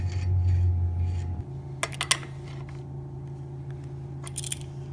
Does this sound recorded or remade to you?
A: recorded